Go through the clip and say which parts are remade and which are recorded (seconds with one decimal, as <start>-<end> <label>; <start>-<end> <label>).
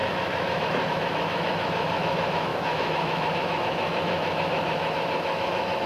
0.0-5.9 remade